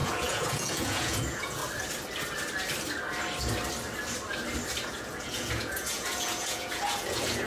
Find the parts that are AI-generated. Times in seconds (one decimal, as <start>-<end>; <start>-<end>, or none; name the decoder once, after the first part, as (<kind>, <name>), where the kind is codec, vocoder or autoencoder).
0.0-1.6 (vocoder, Vocos); 4.9-7.5